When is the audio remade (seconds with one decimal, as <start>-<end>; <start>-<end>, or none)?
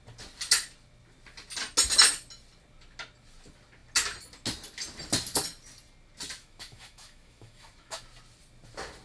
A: 6.4-8.0